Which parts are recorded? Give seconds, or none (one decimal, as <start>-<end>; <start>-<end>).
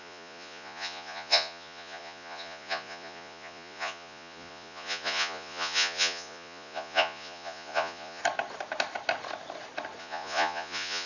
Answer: 8.2-10.0